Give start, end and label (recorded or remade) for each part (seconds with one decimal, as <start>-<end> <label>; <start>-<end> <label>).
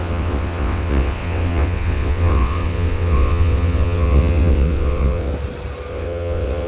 0.0-5.3 remade; 5.3-5.9 recorded; 5.9-6.7 remade